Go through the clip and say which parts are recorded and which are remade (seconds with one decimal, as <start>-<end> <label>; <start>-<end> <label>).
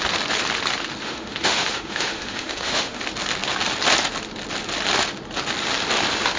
0.0-1.0 recorded; 1.0-3.0 remade; 3.0-6.4 recorded